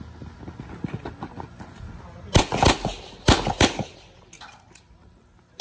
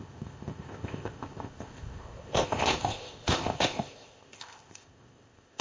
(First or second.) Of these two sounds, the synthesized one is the second